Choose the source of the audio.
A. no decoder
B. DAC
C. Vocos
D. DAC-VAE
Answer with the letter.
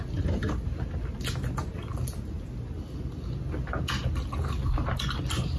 A